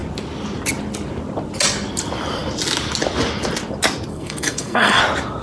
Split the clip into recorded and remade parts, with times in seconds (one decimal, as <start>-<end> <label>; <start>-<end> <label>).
0.0-4.1 recorded; 4.1-5.0 remade; 5.0-5.4 recorded